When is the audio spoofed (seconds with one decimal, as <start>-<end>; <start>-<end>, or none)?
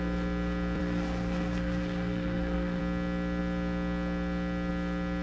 0.8-2.8